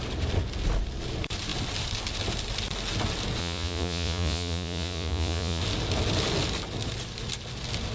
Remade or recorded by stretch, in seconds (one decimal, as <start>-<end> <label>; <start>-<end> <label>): 0.0-3.4 recorded; 3.4-5.6 remade; 5.6-7.9 recorded